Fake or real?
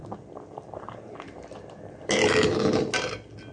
real